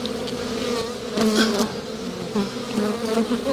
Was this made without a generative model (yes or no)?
yes